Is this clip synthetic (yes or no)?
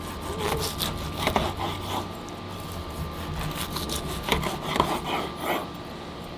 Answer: no